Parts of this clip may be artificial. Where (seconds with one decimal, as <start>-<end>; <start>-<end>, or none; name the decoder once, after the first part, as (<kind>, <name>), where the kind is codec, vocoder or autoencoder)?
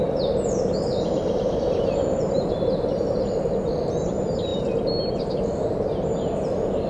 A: 0.0-4.1 (vocoder, BigVGAN v2)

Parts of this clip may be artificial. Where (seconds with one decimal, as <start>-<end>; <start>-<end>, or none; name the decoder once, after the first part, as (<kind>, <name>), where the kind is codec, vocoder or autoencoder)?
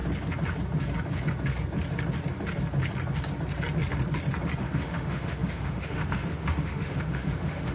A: 4.6-7.7 (autoencoder, DAC-VAE)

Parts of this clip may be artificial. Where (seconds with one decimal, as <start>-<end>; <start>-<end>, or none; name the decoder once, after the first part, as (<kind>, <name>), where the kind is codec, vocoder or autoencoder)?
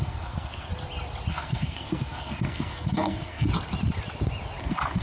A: 0.0-0.7 (codec, SNAC); 1.3-3.5; 4.6-5.0